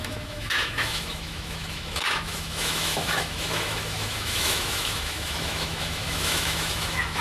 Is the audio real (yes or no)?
no